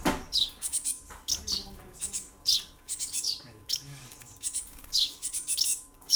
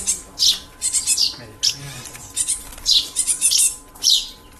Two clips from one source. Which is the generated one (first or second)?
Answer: first